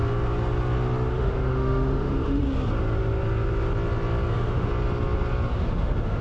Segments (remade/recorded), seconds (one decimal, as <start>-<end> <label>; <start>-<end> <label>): 0.0-1.1 recorded; 1.1-2.4 remade; 2.4-4.3 recorded; 4.3-4.7 remade; 4.7-5.6 recorded; 5.6-6.2 remade